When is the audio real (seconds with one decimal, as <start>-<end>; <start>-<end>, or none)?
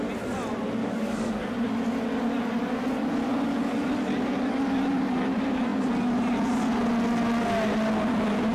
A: 0.0-0.8; 1.5-8.5